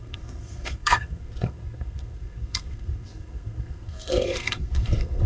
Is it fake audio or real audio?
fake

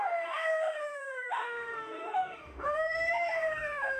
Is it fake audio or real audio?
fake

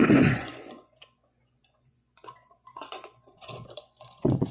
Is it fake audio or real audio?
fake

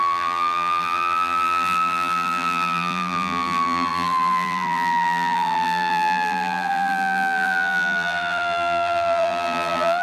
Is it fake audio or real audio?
fake